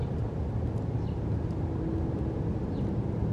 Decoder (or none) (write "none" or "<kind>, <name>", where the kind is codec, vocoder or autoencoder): none